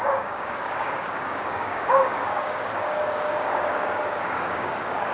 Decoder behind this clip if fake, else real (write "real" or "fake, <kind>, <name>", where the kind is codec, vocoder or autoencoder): fake, codec, DAC